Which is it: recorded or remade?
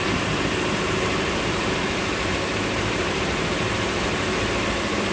remade